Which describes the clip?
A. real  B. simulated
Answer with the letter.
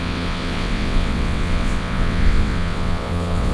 B